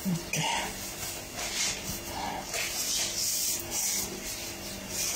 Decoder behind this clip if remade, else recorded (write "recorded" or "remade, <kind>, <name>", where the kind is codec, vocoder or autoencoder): recorded